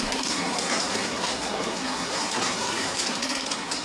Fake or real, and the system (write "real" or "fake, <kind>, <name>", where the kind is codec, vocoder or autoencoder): fake, codec, SNAC